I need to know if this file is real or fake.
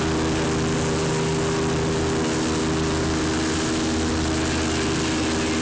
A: real